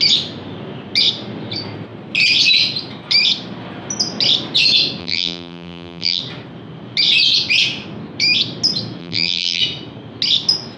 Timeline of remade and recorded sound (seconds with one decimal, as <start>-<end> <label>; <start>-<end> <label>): 0.0-5.0 recorded; 5.0-6.2 remade; 6.2-9.0 recorded; 9.0-9.6 remade; 9.6-10.8 recorded